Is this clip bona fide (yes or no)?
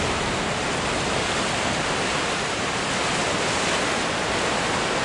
yes